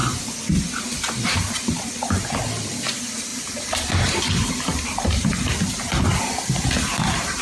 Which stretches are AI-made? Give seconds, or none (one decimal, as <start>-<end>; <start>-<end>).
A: 3.3-4.2; 4.7-5.3

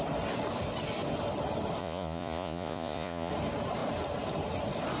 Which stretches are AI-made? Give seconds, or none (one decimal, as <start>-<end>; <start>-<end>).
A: 1.8-3.3

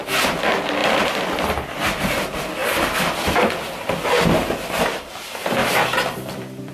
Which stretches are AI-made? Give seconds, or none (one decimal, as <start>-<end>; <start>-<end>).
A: 0.8-2.2; 2.6-5.1; 5.6-6.7

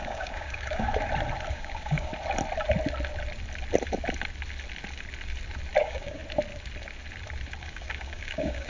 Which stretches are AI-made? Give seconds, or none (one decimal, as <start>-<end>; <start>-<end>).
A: 0.0-0.9; 1.5-2.1; 5.8-6.2; 7.6-8.7

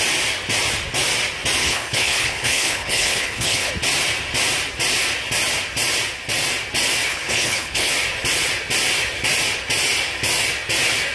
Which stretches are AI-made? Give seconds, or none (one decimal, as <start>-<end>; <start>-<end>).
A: 1.6-3.7; 7.1-7.9

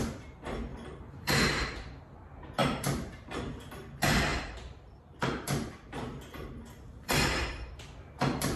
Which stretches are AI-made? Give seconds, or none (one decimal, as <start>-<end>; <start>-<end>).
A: 0.7-2.0; 2.6-3.7; 4.3-8.6

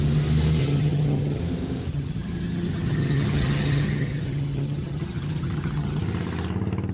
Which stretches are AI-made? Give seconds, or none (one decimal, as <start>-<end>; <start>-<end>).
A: 0.6-1.4; 1.9-6.0

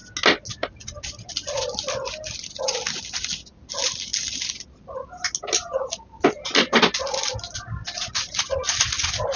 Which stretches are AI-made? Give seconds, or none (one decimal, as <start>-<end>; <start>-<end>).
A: none